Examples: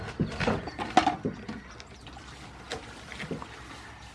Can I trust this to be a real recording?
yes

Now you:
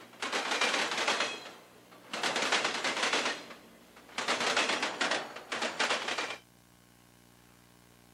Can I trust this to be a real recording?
yes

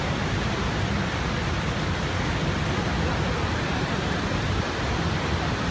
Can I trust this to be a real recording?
yes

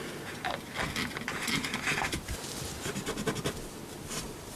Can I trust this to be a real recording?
no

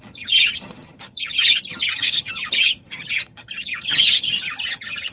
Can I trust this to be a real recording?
no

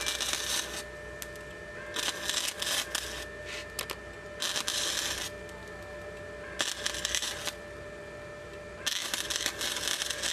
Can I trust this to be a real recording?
yes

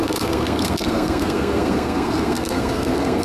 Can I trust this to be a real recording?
no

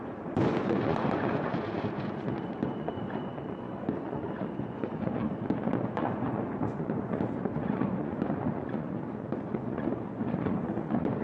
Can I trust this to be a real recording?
no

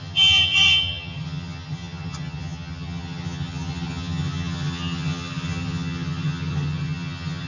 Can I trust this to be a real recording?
no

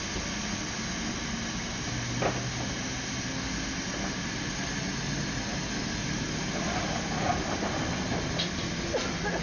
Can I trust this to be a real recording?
yes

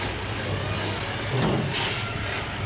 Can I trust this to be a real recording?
yes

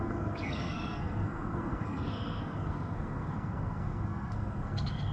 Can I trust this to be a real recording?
no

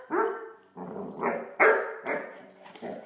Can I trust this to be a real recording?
yes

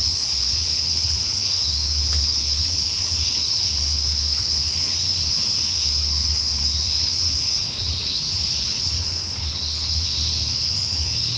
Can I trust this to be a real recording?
no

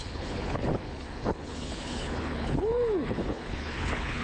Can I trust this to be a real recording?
no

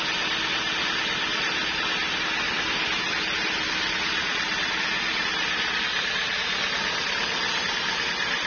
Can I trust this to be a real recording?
yes